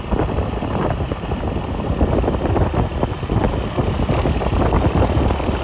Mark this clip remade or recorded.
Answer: recorded